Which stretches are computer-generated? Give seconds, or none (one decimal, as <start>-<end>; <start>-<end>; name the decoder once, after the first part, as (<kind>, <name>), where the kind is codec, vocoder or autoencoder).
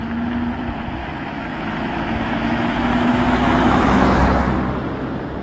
1.0-4.2 (autoencoder, DAC-VAE)